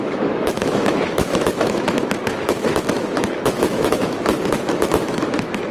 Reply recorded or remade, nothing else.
remade